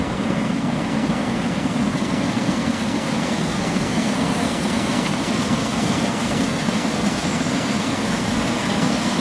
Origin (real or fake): fake